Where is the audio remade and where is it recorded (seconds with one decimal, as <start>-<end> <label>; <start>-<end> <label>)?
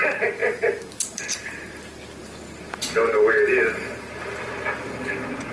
0.0-0.4 recorded; 0.4-1.2 remade; 1.2-5.5 recorded